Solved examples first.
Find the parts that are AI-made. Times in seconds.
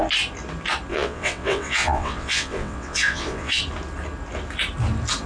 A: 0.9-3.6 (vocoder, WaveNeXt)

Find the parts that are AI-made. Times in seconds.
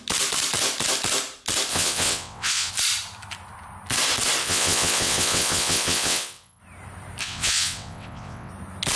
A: 1.7-2.7 (vocoder, WaveNeXt); 4.4-6.6; 7.2-8.5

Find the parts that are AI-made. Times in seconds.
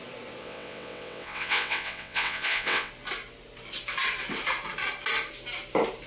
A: 0.4-2.9 (vocoder, WaveNeXt)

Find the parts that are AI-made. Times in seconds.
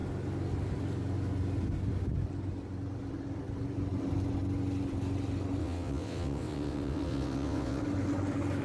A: 5.6-7.8 (vocoder, WaveNeXt)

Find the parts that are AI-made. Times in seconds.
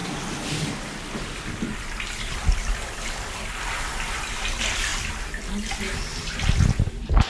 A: none